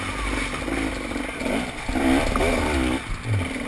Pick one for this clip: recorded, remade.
recorded